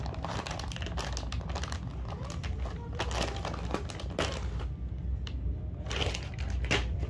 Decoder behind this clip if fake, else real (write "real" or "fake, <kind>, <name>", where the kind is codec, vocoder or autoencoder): real